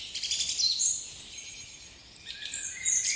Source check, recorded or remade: remade